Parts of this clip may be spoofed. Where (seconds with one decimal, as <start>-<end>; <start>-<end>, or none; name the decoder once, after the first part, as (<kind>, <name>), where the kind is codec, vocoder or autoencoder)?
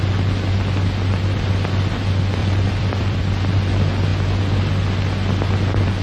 2.4-3.2 (vocoder, BigVGAN v2)